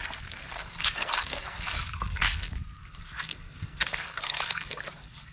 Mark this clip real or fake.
fake